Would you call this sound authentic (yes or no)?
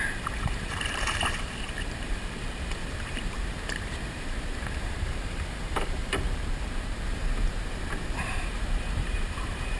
no